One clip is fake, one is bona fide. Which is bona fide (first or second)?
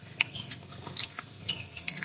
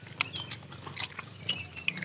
second